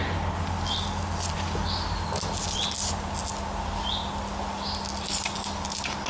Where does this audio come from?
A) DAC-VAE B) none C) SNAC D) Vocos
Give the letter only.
B